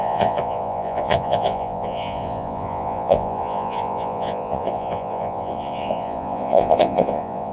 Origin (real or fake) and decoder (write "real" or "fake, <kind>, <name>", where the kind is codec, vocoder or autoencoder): fake, vocoder, Vocos